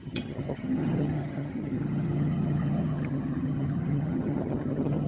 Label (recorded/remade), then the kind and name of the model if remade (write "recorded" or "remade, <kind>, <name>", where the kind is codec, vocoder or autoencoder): remade, vocoder, HiFi-GAN